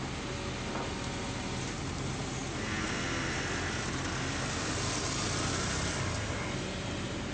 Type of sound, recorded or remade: recorded